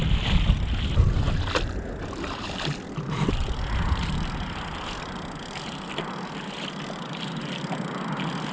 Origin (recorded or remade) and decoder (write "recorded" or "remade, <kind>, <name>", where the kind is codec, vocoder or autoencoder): recorded